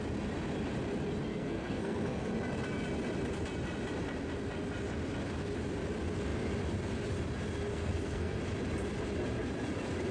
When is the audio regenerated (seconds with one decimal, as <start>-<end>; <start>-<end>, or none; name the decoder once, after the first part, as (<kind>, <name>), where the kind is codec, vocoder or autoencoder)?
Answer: 1.3-2.3 (codec, SNAC); 7.7-8.4